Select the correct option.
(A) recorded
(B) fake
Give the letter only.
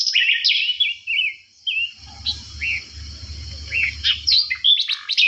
A